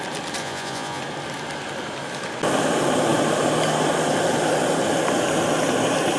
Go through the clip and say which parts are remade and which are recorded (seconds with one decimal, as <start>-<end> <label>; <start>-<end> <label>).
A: 0.0-0.4 recorded; 0.4-1.0 remade; 1.0-6.2 recorded